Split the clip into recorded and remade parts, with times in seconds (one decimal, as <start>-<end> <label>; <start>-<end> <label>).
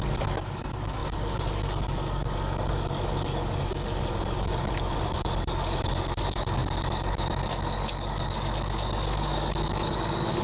0.0-10.4 remade